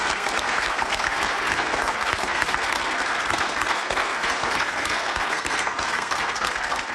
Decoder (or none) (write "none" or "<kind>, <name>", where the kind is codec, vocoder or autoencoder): codec, SNAC